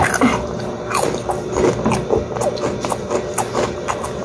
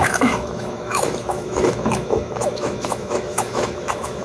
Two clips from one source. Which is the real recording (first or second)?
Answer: first